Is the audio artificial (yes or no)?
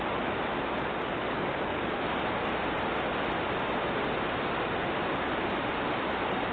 no